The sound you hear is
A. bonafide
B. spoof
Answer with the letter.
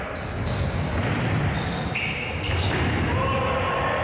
A